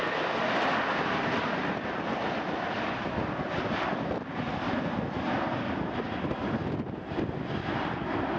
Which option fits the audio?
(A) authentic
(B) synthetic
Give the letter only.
A